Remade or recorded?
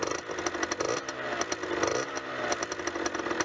recorded